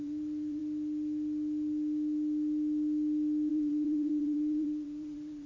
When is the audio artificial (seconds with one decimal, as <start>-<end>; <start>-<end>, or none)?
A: 0.0-0.6; 3.5-5.5